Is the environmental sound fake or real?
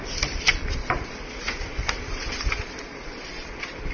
fake